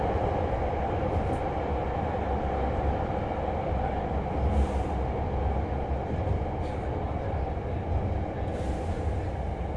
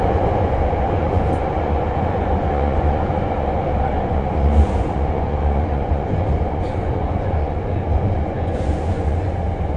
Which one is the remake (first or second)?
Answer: second